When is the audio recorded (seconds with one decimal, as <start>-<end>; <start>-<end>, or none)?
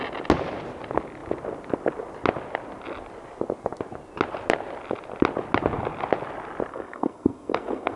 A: 0.0-6.7